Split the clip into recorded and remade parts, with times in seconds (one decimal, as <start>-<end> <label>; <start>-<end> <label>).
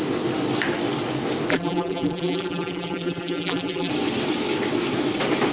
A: 0.0-1.5 recorded; 1.5-3.9 remade; 3.9-5.5 recorded